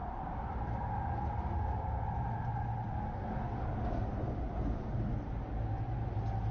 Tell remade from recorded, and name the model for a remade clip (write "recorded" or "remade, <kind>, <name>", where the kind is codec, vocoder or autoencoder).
recorded